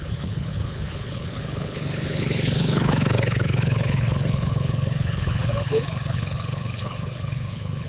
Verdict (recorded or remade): remade